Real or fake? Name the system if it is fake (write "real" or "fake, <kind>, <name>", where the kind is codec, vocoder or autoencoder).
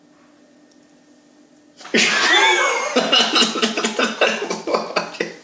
real